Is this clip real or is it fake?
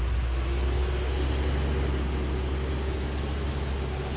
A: real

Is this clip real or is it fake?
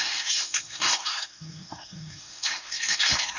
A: fake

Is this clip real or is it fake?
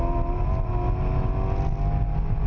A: real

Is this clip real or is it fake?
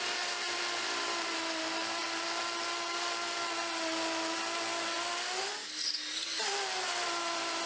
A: real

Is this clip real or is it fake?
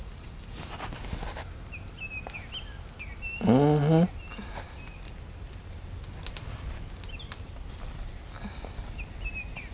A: real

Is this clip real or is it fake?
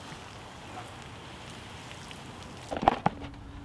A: real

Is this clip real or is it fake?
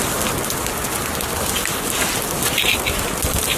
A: real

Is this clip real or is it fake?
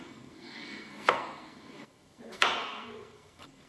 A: fake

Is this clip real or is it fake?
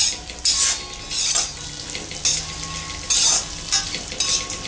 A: real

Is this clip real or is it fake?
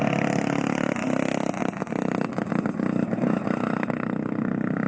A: real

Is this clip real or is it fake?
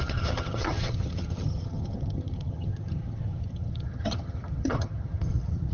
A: fake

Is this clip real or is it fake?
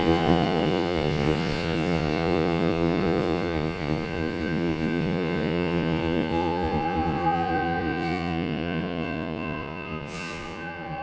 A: fake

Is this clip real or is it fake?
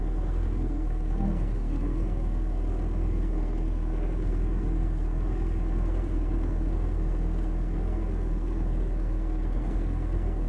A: fake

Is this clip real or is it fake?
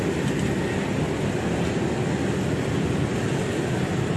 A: real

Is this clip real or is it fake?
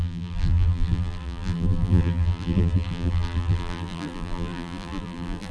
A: fake